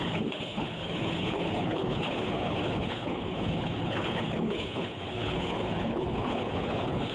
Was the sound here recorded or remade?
remade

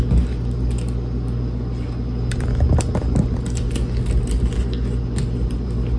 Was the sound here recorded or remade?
recorded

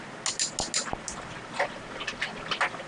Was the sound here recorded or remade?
recorded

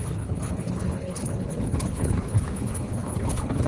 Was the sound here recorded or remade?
remade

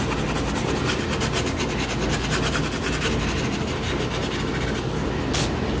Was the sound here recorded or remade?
recorded